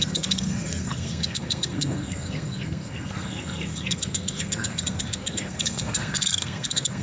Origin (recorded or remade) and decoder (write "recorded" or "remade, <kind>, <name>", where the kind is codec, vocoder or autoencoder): remade, codec, SNAC